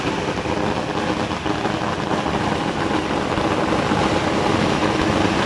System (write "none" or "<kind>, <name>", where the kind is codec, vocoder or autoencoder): none